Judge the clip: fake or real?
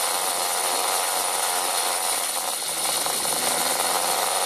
real